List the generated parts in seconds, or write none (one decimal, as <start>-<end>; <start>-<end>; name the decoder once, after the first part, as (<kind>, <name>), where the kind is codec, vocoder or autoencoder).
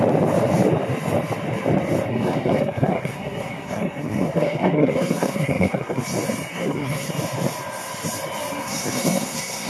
2.1-6.0 (codec, SNAC); 6.5-7.1; 8.6-9.7